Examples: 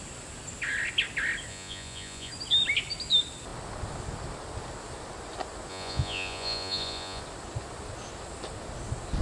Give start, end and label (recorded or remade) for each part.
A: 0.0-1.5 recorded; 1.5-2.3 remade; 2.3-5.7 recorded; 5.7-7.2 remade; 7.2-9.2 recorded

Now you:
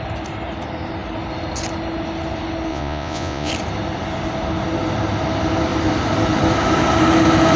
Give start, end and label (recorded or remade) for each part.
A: 0.0-2.7 recorded; 2.7-3.5 remade; 3.5-7.6 recorded

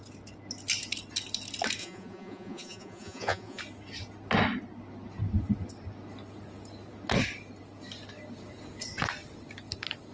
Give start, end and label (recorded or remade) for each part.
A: 0.0-1.8 recorded; 1.8-3.6 remade; 3.6-10.1 recorded

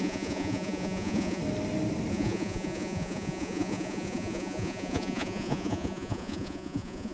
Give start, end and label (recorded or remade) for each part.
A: 0.0-1.4 remade; 1.4-2.1 recorded; 2.1-7.1 remade

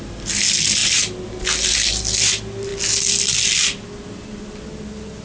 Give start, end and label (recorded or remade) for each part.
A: 0.0-5.2 recorded

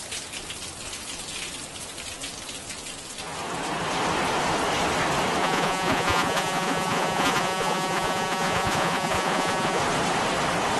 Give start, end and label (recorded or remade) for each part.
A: 0.0-5.4 recorded; 5.4-9.8 remade; 9.8-10.8 recorded

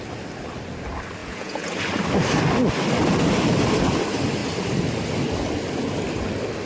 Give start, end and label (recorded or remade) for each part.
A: 0.0-1.2 recorded; 1.2-1.8 remade; 1.8-6.7 recorded